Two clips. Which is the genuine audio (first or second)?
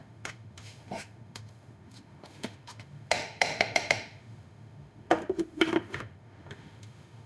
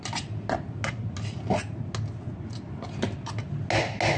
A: second